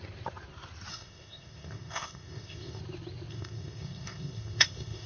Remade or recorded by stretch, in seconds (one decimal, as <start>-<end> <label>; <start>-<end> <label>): 0.0-0.9 recorded; 0.9-2.8 remade; 2.8-3.3 recorded; 3.3-5.1 remade